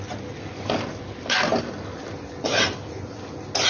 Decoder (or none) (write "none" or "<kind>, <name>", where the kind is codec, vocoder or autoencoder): none